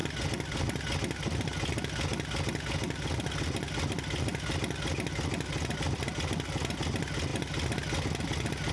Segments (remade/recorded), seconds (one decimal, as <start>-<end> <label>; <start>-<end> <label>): 0.0-8.7 recorded